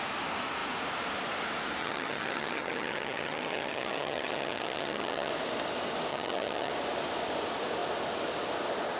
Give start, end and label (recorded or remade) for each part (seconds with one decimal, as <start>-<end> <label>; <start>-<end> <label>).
0.0-1.8 recorded; 1.8-5.3 remade; 5.3-6.1 recorded; 6.1-6.7 remade; 6.7-9.0 recorded